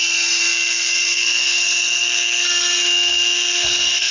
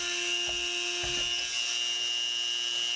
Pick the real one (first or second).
second